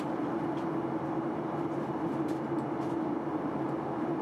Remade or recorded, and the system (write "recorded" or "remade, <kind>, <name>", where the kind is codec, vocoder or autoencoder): recorded